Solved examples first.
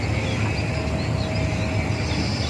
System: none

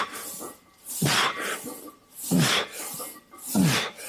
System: none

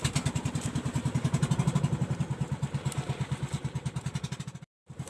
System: vocoder, BigVGAN v2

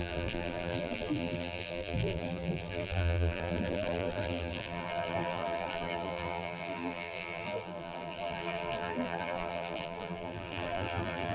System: vocoder, BigVGAN v2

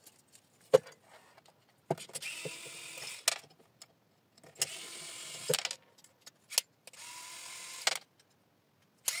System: none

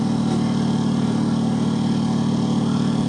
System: none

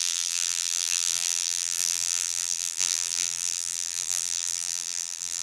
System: vocoder, BigVGAN v2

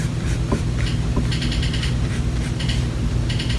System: vocoder, BigVGAN v2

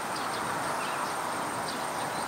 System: none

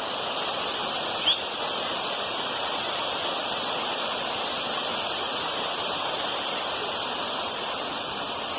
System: none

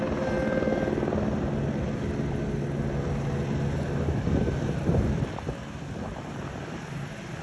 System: none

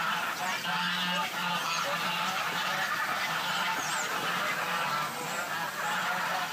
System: none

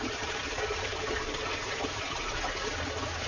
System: vocoder, BigVGAN v2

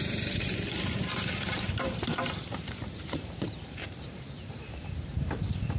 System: vocoder, BigVGAN v2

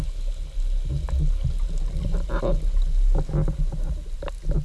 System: none